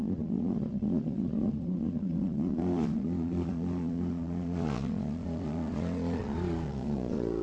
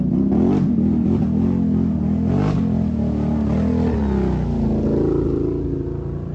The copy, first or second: first